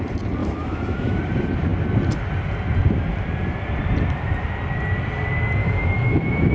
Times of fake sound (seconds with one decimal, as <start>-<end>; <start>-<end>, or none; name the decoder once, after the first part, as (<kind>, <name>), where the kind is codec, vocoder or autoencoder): 0.4-1.2 (autoencoder, DAC-VAE); 5.6-6.5